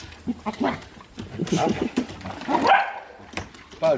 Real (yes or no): yes